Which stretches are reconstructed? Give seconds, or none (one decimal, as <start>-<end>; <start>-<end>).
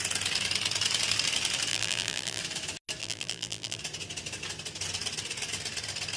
1.7-2.4; 3.0-3.8